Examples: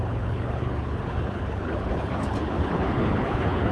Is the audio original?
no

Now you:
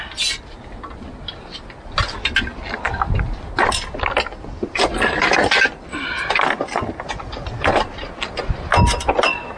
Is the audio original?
yes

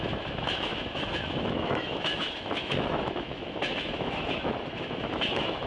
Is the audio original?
no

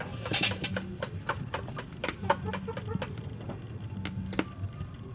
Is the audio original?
yes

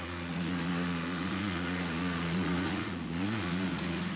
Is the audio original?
no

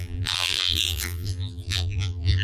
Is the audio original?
no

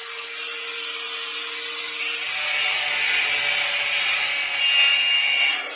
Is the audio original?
yes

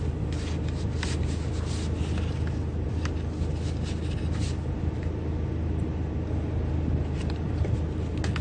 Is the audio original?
yes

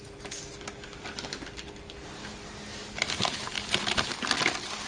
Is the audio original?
yes